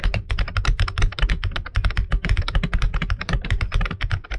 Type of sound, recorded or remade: remade